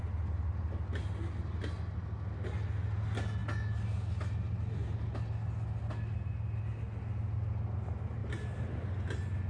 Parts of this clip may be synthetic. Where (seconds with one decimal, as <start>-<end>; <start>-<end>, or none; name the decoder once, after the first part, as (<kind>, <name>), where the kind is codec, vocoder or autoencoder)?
none